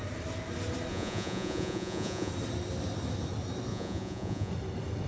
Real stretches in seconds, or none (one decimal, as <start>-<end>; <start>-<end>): 0.0-0.9; 2.3-3.7; 4.5-5.1